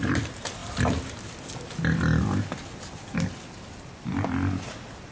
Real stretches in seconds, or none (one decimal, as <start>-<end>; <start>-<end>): 0.0-5.1